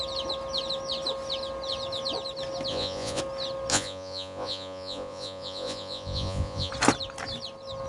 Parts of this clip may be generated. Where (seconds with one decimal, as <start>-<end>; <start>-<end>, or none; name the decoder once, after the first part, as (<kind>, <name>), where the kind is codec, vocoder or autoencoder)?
2.7-3.2 (vocoder, Vocos); 3.7-6.7